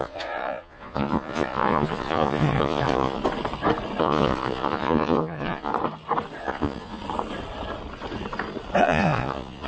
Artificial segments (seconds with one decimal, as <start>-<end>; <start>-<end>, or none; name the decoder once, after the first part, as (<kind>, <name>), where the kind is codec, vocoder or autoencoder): 0.0-3.2 (vocoder, Vocos); 4.0-5.7; 6.4-7.0; 8.8-9.7